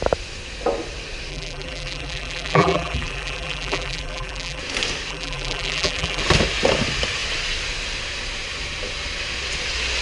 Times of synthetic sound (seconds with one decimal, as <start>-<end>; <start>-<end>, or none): 1.3-4.6; 5.1-6.2